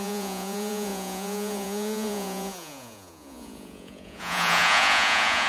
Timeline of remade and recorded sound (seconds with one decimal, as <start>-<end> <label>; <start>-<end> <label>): 0.0-5.5 remade